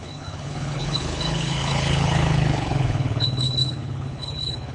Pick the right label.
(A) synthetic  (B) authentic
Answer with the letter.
A